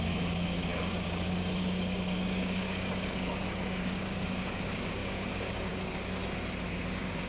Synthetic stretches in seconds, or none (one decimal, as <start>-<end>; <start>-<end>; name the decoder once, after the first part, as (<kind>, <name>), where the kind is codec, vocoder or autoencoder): 0.0-6.2 (codec, DAC); 6.8-7.3

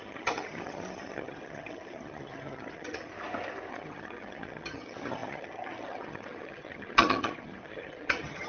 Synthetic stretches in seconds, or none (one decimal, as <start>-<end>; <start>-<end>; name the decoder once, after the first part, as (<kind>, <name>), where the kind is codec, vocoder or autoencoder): 0.0-3.1 (vocoder, HiFi-GAN); 3.7-8.5

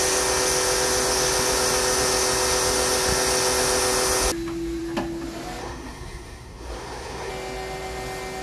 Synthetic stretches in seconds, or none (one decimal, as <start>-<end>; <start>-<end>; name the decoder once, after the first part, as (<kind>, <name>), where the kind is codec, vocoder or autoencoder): 5.6-7.3 (codec, SNAC)

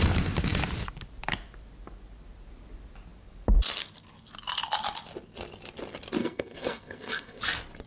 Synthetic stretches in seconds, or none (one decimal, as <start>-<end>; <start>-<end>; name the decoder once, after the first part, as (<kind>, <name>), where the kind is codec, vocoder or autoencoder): 6.2-7.4 (codec, SNAC)

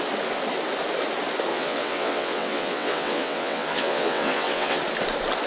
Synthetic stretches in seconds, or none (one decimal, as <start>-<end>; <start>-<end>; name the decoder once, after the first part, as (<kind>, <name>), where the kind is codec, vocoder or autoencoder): 1.5-4.8 (vocoder, WaveNeXt)

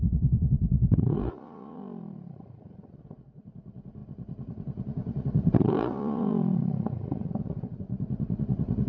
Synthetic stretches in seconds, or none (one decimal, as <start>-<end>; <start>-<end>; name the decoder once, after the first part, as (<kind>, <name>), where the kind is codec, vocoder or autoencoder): 0.0-1.8 (vocoder, Vocos); 2.3-8.9